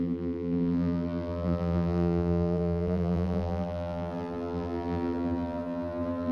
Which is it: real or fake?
fake